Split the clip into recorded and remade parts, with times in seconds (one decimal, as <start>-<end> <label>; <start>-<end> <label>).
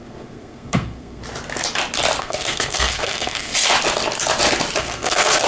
0.0-1.2 remade; 1.2-2.2 recorded; 2.2-3.5 remade; 3.5-4.8 recorded; 4.8-5.5 remade